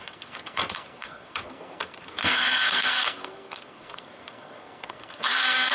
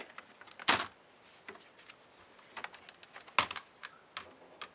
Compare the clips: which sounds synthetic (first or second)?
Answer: first